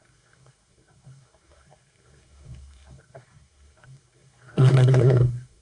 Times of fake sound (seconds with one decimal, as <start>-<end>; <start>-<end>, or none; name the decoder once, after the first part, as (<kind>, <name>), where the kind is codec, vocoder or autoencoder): 0.0-5.6 (codec, SNAC)

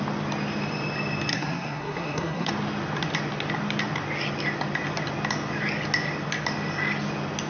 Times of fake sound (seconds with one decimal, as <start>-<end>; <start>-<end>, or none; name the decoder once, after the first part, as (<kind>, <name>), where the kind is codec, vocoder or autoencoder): 1.3-2.5 (codec, SNAC)

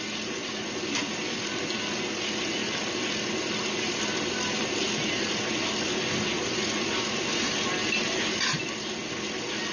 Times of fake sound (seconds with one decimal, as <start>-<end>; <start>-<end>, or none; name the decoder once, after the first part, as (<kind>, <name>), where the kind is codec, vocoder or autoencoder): none

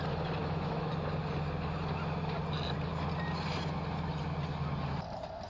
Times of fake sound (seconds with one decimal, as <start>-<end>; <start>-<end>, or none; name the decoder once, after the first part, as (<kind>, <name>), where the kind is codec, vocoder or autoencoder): 0.4-0.9 (autoencoder, DAC-VAE)

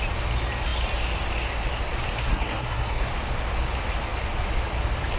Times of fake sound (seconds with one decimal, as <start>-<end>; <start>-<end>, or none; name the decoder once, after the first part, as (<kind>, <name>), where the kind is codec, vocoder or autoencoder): 2.2-3.1 (codec, SNAC)

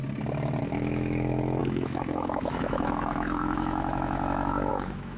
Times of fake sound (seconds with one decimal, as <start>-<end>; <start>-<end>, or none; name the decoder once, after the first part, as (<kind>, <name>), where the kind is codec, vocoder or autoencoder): 0.6-5.2 (autoencoder, DAC-VAE)

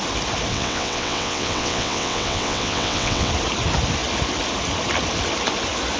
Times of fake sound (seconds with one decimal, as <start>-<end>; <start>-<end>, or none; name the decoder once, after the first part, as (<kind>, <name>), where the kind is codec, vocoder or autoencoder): 0.5-3.3 (vocoder, WaveNeXt)